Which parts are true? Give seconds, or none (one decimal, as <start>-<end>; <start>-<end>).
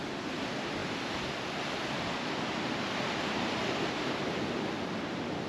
0.0-3.6; 4.2-5.5